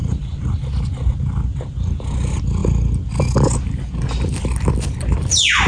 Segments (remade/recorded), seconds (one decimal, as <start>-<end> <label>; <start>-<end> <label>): 0.0-0.5 remade; 0.5-5.7 recorded